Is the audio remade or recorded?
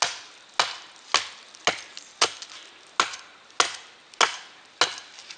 recorded